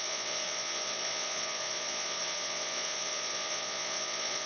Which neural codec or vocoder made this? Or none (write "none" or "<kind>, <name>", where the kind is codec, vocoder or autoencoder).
vocoder, Vocos